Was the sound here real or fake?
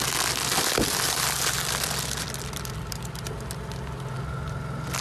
real